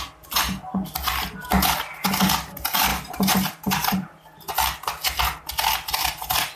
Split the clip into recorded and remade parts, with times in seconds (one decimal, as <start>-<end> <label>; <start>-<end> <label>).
0.0-2.9 recorded; 2.9-4.5 remade; 4.5-6.6 recorded